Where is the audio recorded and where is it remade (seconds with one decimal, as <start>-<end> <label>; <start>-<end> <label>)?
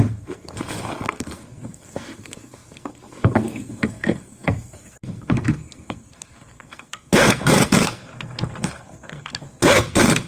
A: 0.0-10.3 remade